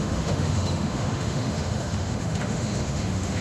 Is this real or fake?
fake